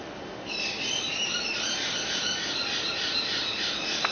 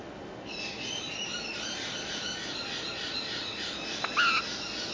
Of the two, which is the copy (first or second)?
first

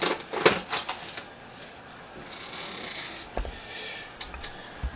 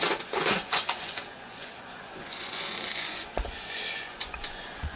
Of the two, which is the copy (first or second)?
second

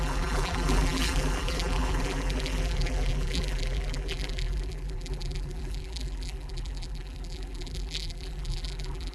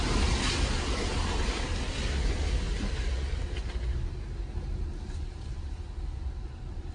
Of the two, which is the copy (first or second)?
first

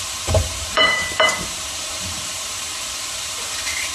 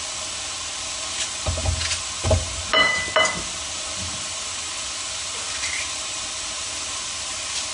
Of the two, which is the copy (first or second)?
first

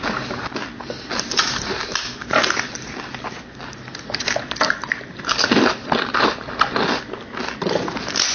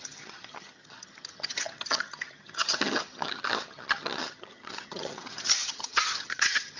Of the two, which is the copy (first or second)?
second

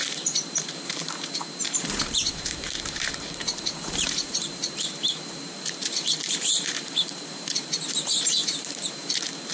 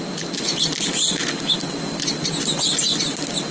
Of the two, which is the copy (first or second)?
first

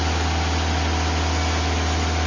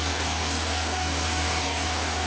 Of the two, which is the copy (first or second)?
second